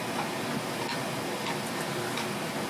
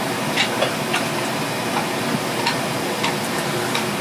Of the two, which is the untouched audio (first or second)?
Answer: first